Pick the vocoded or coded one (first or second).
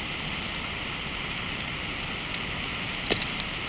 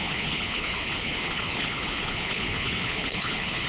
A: second